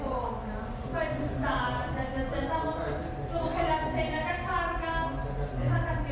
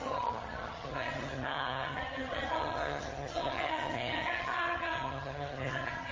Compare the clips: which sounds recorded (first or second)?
first